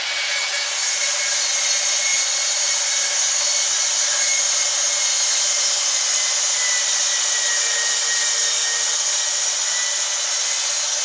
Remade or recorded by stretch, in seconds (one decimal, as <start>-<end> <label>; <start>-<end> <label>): 0.0-11.0 recorded